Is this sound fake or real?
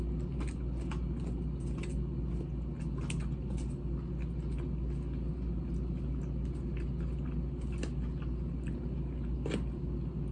real